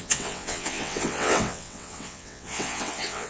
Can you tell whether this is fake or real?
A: fake